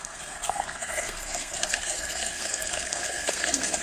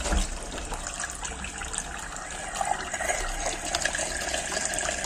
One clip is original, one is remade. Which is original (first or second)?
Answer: second